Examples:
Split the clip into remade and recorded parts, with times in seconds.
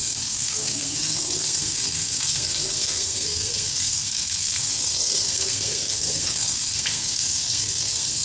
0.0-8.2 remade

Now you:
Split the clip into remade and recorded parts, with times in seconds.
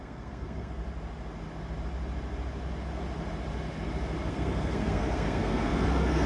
0.0-0.8 remade; 0.8-4.3 recorded; 4.3-6.3 remade